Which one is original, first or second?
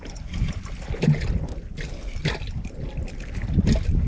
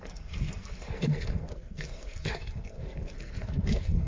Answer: first